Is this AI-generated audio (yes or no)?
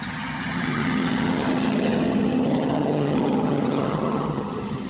yes